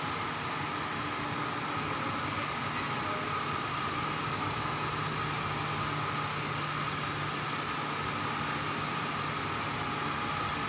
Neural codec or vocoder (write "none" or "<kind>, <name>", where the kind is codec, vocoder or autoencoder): none